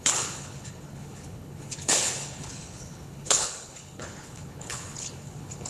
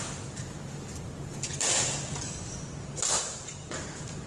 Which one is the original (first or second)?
second